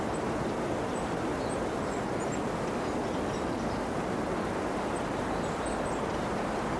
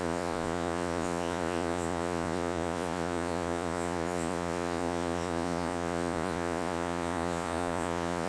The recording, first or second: first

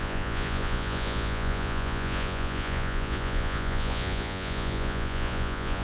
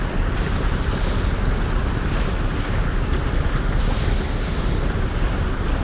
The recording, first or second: second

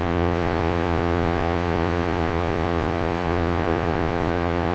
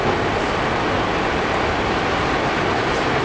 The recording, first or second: second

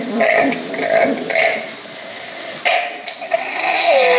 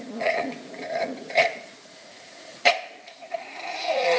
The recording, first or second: first